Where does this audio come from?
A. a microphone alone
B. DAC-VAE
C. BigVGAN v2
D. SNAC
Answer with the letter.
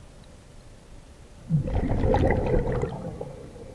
A